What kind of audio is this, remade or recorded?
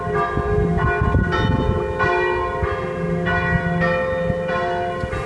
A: recorded